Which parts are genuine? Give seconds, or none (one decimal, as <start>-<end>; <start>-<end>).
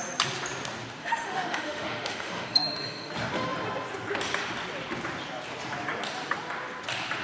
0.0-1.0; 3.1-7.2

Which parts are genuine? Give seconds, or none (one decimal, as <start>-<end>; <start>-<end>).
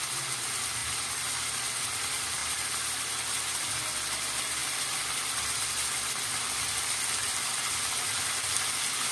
0.0-0.8; 1.4-2.4; 3.6-4.6; 5.1-9.1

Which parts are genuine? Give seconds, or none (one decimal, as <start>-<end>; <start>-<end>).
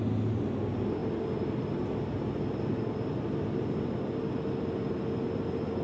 0.0-5.8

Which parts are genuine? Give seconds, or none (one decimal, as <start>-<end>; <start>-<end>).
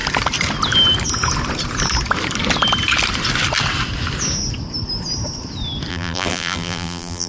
0.0-5.9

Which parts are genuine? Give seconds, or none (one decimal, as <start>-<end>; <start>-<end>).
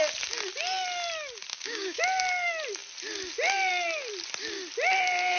0.0-1.5; 2.0-5.4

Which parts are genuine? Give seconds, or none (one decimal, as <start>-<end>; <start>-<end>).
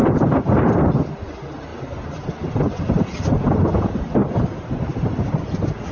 0.8-1.7; 2.7-4.2